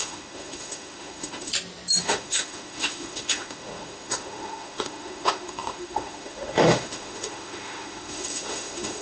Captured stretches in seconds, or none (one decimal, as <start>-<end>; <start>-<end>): 1.5-2.0